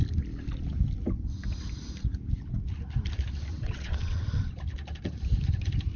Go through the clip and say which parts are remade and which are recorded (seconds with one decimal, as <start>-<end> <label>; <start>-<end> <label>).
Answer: 0.0-3.5 recorded; 3.5-4.5 remade; 4.5-6.0 recorded